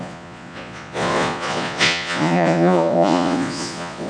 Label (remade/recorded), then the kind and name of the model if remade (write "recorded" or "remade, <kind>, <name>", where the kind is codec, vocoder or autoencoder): remade, vocoder, Vocos